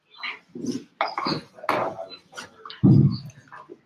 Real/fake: real